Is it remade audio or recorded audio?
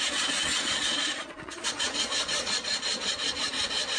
remade